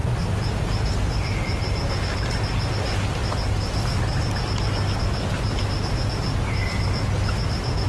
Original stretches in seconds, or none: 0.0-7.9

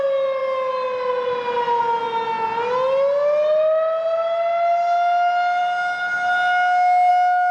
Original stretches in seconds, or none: 0.0-7.5

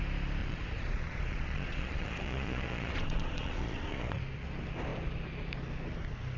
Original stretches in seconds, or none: 0.0-0.4; 4.2-6.4